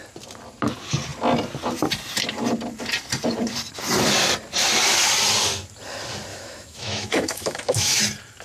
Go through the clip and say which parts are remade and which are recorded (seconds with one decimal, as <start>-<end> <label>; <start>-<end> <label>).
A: 0.0-6.3 recorded; 6.3-8.0 remade; 8.0-8.4 recorded